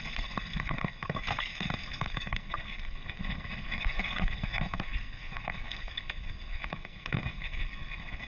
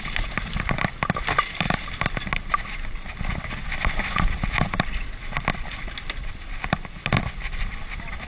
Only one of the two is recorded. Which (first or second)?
second